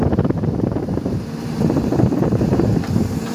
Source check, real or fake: fake